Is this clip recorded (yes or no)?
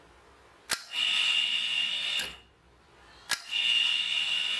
yes